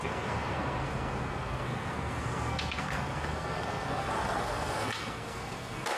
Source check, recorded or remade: remade